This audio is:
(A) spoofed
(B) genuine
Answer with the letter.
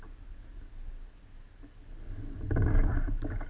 B